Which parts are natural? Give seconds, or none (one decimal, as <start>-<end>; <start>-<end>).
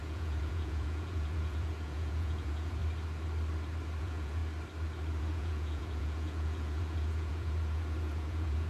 2.8-4.0; 4.4-5.2